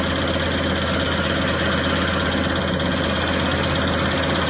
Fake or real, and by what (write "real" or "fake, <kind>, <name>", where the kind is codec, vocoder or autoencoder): real